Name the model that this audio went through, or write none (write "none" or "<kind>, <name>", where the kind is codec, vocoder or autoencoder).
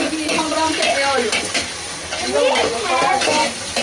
none